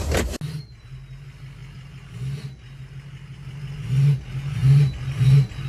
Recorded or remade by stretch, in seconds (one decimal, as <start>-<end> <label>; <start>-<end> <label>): 0.0-5.7 recorded